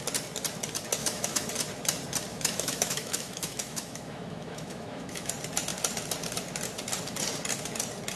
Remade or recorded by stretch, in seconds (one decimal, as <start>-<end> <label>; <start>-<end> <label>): 0.0-1.0 recorded; 1.0-1.5 remade; 1.5-2.3 recorded; 2.3-5.3 remade; 5.3-8.2 recorded

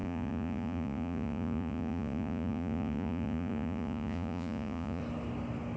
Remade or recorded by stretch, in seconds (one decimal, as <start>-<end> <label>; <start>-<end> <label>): 0.0-5.0 remade; 5.0-5.8 recorded

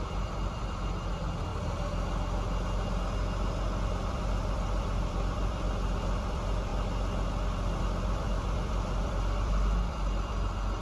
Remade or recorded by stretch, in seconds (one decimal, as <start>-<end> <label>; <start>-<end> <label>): 0.0-1.5 remade; 1.5-3.8 recorded; 3.8-6.7 remade; 6.7-7.8 recorded; 7.8-10.8 remade

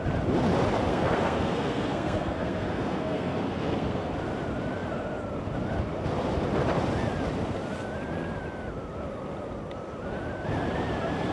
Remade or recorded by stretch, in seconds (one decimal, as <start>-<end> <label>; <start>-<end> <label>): 0.0-0.9 recorded; 0.9-4.1 remade; 4.1-11.3 recorded

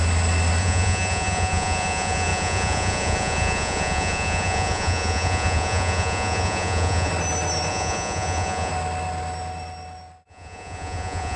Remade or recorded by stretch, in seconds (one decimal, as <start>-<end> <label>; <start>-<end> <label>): 0.0-0.6 recorded; 0.6-7.1 remade; 7.1-7.7 recorded; 7.7-8.7 remade; 8.7-10.3 recorded; 10.3-11.4 remade

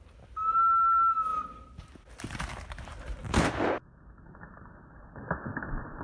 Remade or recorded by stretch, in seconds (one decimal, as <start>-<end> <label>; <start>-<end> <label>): 0.0-6.0 recorded

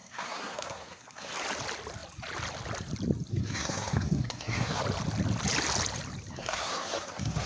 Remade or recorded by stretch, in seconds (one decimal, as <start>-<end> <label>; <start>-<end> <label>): 0.0-1.3 remade; 1.3-3.3 recorded; 3.3-4.8 remade; 4.8-6.3 recorded; 6.3-7.5 remade

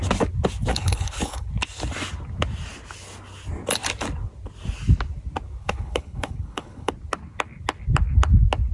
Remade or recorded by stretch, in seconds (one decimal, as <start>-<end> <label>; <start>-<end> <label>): 0.0-0.7 recorded; 0.7-1.5 remade; 1.5-5.6 recorded; 5.6-6.9 remade; 6.9-8.7 recorded